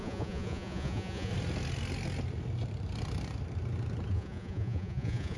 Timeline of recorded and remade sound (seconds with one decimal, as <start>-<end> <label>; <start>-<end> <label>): 0.0-1.3 remade; 1.3-4.1 recorded; 4.1-5.4 remade